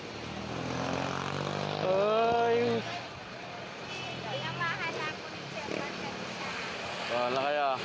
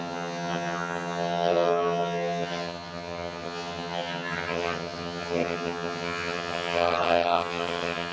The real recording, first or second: first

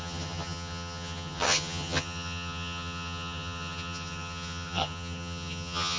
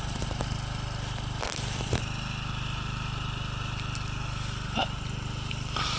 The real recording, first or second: second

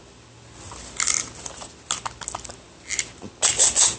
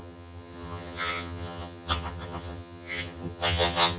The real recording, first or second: first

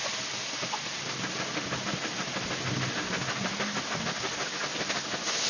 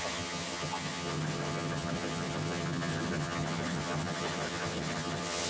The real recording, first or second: first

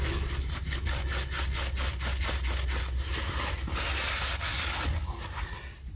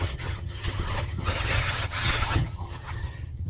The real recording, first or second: first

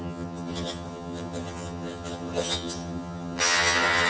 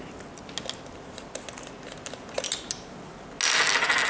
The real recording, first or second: second